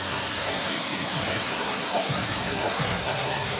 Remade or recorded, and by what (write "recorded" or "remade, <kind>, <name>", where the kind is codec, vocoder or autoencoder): remade, codec, SNAC